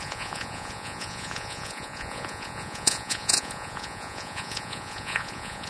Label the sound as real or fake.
fake